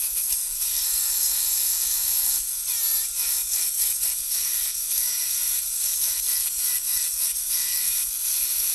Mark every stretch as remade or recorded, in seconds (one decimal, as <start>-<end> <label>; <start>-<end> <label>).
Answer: 0.0-2.6 remade; 2.6-3.2 recorded; 3.2-8.7 remade